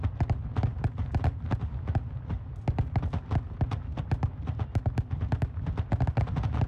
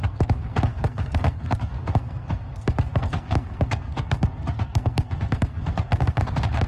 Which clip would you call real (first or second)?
first